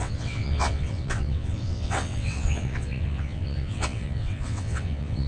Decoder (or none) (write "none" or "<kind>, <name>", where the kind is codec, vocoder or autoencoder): vocoder, WaveNeXt